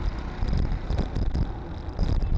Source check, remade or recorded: recorded